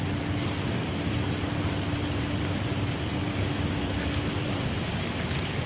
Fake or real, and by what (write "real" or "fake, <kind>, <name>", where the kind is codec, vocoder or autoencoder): real